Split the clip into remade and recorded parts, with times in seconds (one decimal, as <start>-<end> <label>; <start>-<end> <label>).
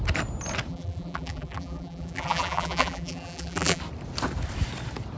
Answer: 0.0-0.7 recorded; 0.7-3.8 remade; 3.8-5.2 recorded